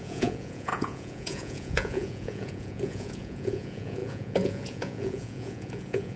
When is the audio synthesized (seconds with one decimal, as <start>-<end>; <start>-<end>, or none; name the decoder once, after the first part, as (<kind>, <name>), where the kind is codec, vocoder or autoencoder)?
0.0-6.2 (vocoder, Vocos)